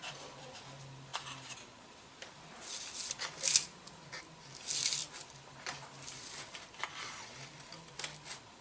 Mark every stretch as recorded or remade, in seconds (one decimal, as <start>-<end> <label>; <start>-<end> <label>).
0.0-8.6 recorded